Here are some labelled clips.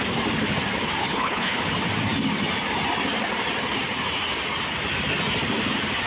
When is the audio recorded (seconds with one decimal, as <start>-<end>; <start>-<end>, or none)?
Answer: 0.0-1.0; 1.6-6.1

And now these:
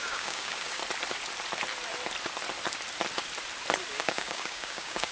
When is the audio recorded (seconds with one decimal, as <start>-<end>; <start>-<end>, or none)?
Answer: 0.8-3.9

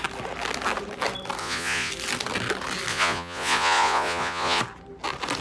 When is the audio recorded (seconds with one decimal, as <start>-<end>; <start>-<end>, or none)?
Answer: 0.0-1.4; 1.9-2.9; 4.6-5.4

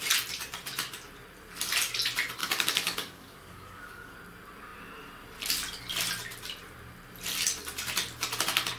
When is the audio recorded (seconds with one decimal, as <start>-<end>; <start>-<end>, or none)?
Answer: 0.0-2.4; 4.2-8.8